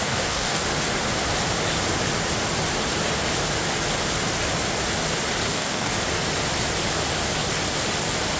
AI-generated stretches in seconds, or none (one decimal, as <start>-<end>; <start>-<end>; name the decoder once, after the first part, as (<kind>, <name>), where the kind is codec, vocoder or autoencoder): 0.0-0.6 (codec, DAC); 5.5-5.9